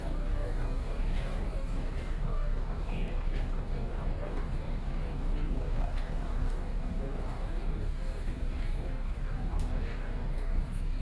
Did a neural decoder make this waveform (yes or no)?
yes